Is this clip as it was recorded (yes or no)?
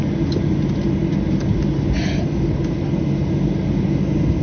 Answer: yes